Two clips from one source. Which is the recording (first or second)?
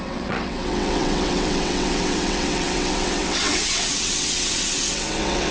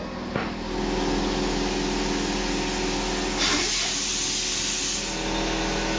second